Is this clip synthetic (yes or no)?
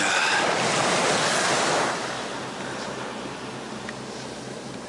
no